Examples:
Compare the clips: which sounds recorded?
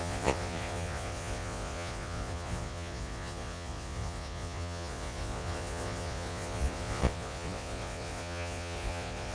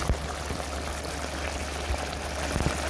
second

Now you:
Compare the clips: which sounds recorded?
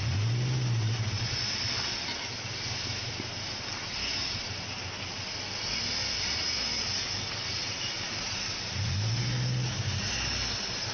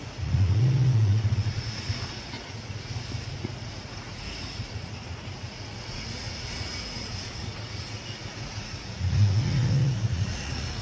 first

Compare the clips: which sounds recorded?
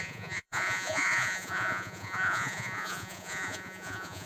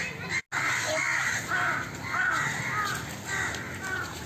second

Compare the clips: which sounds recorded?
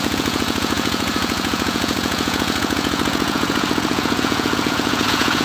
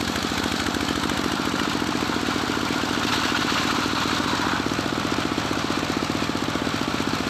second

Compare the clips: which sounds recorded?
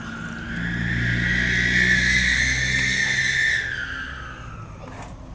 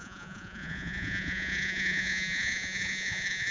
first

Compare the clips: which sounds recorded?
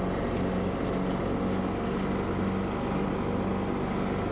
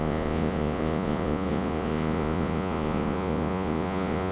first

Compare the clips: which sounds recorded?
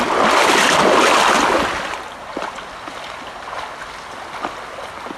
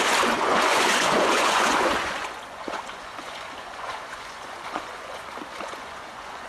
first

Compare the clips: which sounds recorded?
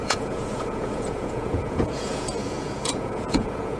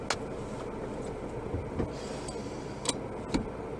second